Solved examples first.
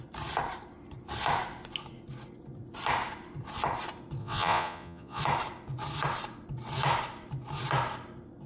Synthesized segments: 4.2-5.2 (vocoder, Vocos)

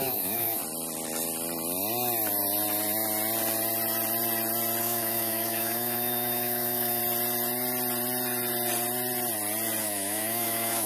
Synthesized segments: 0.0-0.6 (autoencoder, DAC-VAE); 4.8-7.0; 9.8-10.9

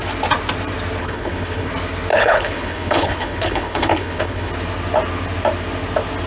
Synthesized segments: 1.0-1.7 (codec, HILCodec); 2.1-4.5

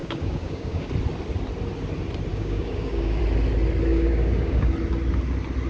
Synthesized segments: 0.0-0.9 (codec, DAC); 2.3-3.2; 3.9-4.7

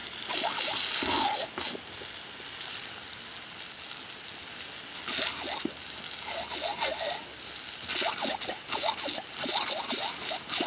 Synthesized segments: none